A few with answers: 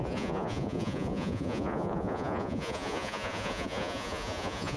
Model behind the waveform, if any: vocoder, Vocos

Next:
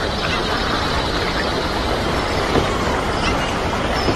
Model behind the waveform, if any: none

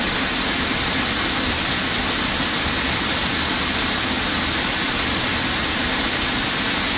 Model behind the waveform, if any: none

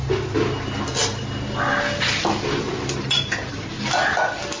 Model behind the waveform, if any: none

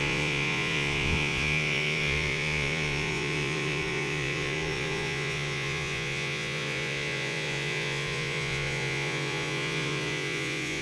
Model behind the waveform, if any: vocoder, Vocos